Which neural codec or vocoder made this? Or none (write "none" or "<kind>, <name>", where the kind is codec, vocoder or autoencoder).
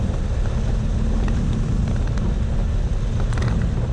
none